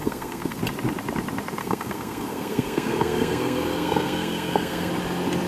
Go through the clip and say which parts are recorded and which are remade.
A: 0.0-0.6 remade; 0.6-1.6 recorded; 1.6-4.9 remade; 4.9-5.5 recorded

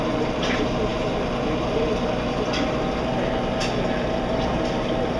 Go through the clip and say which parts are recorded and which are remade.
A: 0.0-5.2 recorded

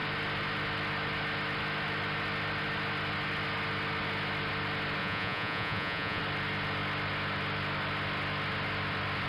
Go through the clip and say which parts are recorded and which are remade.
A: 0.0-5.0 recorded; 5.0-6.2 remade; 6.2-9.3 recorded

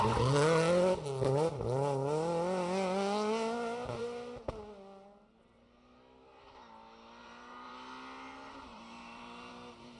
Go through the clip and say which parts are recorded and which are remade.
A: 0.0-7.2 recorded; 7.2-7.7 remade; 7.7-8.7 recorded; 8.7-9.5 remade; 9.5-10.0 recorded

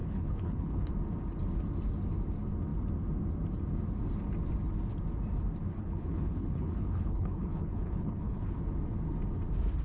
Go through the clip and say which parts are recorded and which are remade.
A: 0.0-0.9 remade; 0.9-5.7 recorded; 5.7-8.6 remade; 8.6-9.8 recorded

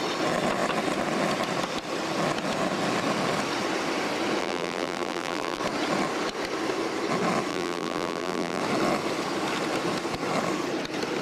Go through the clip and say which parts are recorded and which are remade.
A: 0.0-4.4 recorded; 4.4-5.6 remade; 5.6-7.5 recorded; 7.5-8.6 remade; 8.6-11.2 recorded

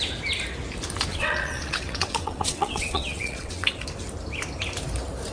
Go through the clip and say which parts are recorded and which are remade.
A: 0.0-1.1 recorded; 1.1-3.8 remade; 3.8-5.3 recorded

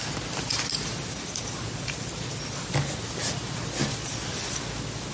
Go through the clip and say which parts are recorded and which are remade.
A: 0.0-5.1 recorded